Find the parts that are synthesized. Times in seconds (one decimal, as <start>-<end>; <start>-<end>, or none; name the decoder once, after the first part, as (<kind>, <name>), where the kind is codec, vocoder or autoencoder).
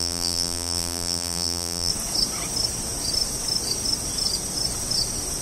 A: 0.0-1.9 (vocoder, BigVGAN v2)